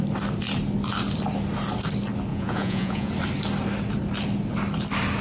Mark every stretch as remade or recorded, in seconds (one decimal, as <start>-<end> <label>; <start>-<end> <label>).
0.0-2.3 recorded; 2.3-3.1 remade; 3.1-5.2 recorded